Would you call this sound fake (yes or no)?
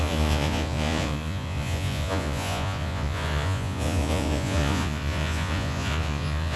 yes